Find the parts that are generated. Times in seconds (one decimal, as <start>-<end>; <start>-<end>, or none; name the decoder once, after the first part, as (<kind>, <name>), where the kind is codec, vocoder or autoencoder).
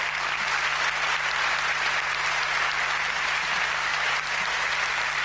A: 3.9-4.7 (vocoder, BigVGAN v2)